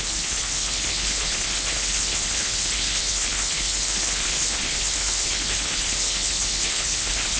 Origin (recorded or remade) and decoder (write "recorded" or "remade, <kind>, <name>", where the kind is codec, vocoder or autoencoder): remade, codec, HILCodec